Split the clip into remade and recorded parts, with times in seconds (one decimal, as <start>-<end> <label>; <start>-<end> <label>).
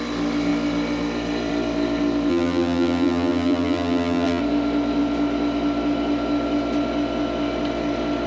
0.0-2.3 recorded; 2.3-4.4 remade; 4.4-8.3 recorded